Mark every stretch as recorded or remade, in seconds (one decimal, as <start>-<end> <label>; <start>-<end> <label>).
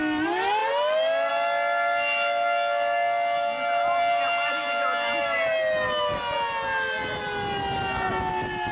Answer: 0.0-8.7 recorded